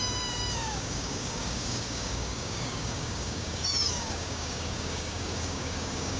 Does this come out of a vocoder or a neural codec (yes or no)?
yes